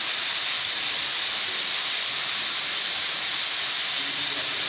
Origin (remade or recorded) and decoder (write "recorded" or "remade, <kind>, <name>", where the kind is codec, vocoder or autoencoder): remade, vocoder, BigVGAN v2